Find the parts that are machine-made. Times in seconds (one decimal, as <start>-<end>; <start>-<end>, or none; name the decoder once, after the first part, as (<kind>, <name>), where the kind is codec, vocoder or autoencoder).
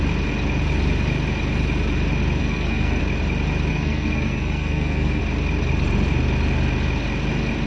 2.4-3.0 (codec, SNAC); 3.7-5.2